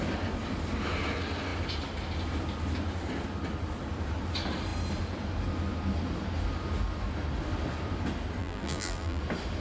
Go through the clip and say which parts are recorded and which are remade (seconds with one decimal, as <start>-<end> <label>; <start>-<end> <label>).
0.0-8.4 recorded; 8.4-9.2 remade; 9.2-9.6 recorded